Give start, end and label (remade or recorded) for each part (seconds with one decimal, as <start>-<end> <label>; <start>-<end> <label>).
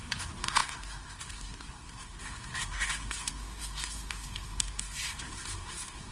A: 0.0-6.1 remade